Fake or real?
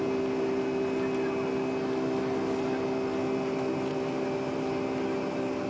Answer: real